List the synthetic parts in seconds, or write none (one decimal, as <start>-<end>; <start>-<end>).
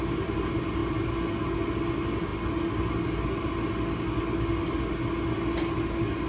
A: none